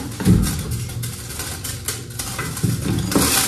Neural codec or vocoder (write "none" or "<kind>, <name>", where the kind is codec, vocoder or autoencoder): none